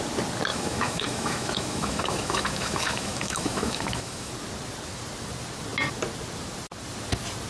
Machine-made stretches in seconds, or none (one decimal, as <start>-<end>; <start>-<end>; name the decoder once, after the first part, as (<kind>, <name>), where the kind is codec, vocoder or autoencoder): 0.5-4.3 (autoencoder, DAC-VAE)